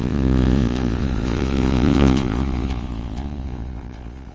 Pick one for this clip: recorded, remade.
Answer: remade